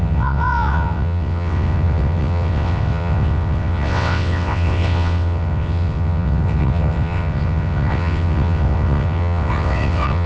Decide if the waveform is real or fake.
fake